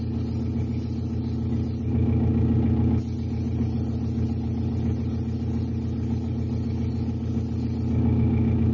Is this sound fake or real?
real